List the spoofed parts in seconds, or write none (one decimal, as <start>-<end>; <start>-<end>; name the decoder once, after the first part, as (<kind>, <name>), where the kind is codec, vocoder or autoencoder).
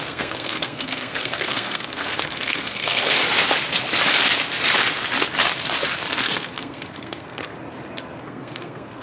0.0-3.2 (codec, SNAC); 6.2-7.5; 8.2-9.0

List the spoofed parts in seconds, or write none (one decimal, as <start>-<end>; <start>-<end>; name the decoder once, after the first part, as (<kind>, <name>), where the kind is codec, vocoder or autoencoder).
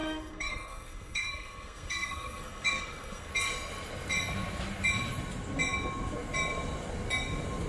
0.0-3.3 (codec, SNAC)